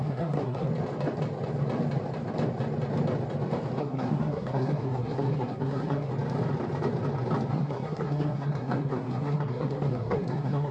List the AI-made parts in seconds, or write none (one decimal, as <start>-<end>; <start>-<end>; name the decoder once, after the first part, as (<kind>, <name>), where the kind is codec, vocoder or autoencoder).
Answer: 0.0-0.7 (codec, SNAC); 3.8-6.1; 7.5-10.7